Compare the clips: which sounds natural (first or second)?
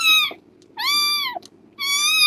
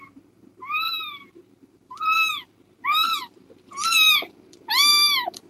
first